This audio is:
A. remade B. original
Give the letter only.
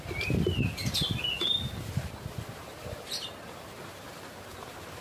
B